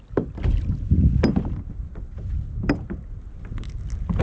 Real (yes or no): yes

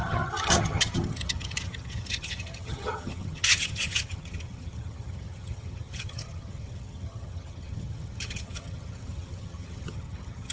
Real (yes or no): no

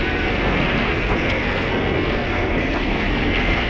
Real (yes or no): no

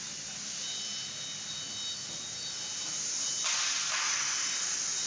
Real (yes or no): yes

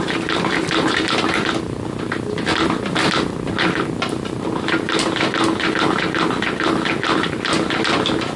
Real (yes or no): yes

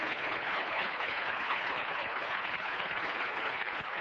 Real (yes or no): no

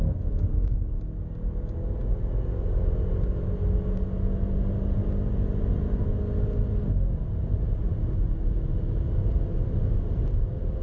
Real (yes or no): yes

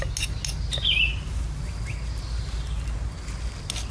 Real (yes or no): yes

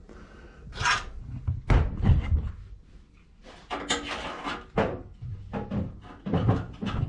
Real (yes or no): yes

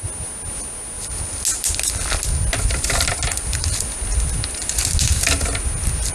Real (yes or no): yes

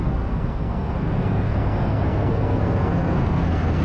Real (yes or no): no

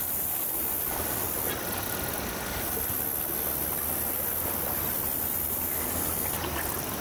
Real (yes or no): yes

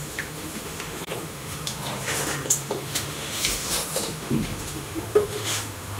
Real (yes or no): no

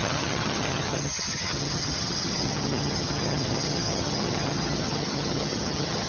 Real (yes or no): no